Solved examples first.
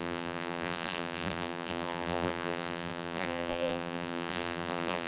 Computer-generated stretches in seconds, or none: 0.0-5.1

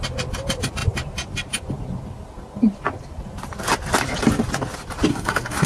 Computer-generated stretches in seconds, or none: 5.1-5.7

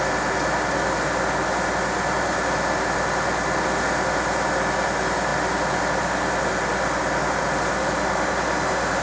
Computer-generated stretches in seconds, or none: none

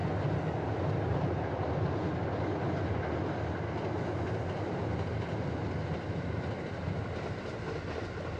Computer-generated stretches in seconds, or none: none

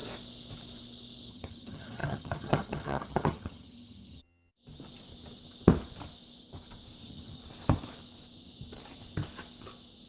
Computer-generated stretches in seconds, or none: 1.3-4.5; 7.0-7.4

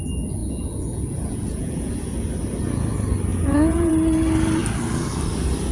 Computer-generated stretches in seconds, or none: 0.4-1.9; 3.3-3.9

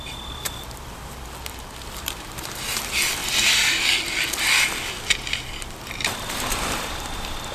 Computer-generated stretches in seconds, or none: 0.0-1.0; 1.9-3.2; 6.1-7.5

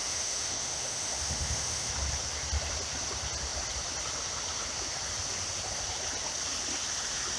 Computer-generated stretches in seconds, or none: 0.0-1.9